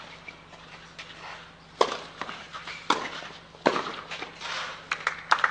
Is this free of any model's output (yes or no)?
yes